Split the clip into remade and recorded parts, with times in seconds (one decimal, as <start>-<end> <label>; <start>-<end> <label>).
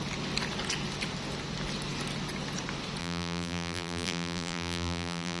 0.0-3.0 recorded; 3.0-5.4 remade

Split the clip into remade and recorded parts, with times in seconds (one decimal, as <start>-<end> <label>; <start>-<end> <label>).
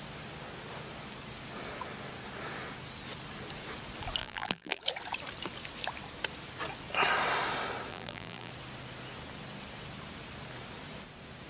0.0-4.2 recorded; 4.2-4.8 remade; 4.8-7.9 recorded; 7.9-8.5 remade; 8.5-11.5 recorded